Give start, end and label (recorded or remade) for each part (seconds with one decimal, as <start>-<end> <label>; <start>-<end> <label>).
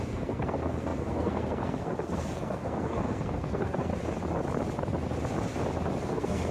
0.0-3.9 remade; 3.9-6.0 recorded; 6.0-6.5 remade